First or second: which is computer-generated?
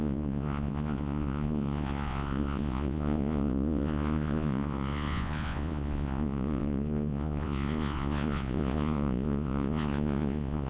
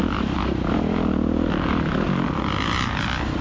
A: first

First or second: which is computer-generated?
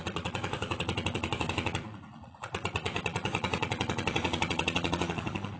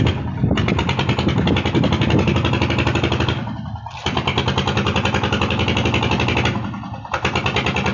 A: first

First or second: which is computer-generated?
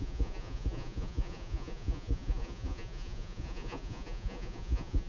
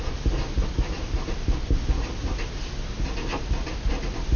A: first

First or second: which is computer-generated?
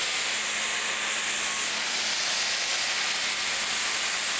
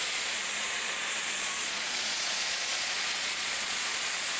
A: second